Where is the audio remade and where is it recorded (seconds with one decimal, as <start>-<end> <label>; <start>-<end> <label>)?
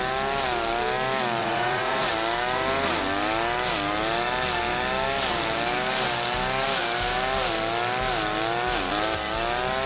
0.0-1.4 recorded; 1.4-2.1 remade; 2.1-9.9 recorded